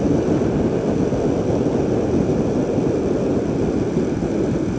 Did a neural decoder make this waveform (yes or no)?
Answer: no